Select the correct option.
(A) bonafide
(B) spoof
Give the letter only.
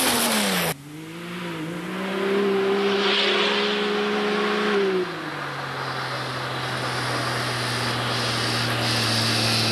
A